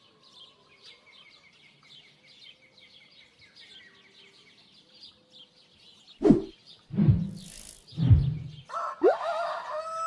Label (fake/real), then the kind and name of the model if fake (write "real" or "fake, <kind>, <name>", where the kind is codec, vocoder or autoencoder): real